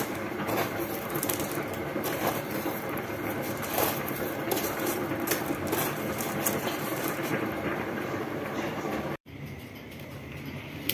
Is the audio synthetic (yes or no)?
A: yes